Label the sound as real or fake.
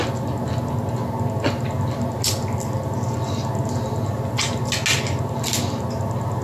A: real